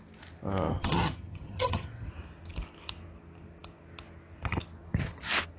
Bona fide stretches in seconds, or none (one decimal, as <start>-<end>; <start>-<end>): 0.0-0.7; 2.1-5.6